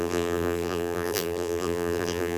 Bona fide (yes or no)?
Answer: no